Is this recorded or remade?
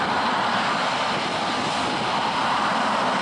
recorded